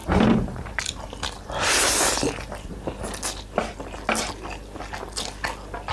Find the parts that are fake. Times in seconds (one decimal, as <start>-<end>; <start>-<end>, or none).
0.0-0.8